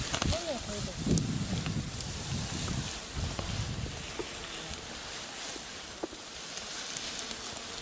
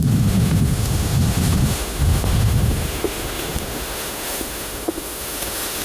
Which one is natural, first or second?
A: first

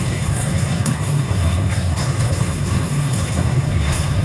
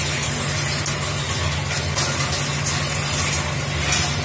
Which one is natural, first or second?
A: second